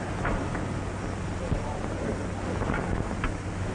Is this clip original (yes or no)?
yes